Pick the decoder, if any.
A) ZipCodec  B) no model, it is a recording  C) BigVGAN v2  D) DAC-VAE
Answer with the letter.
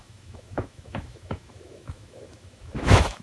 D